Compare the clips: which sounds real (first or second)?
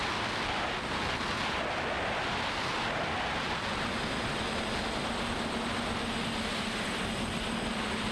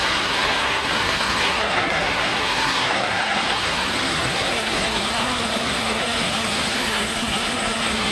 first